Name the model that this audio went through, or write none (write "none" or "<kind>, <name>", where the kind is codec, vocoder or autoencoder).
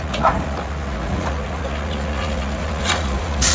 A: vocoder, Vocos